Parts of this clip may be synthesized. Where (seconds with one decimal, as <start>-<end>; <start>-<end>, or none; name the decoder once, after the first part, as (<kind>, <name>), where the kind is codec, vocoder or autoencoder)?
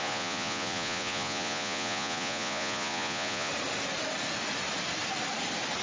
0.0-3.5 (vocoder, Vocos)